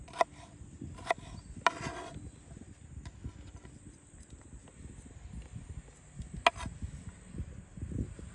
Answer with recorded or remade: recorded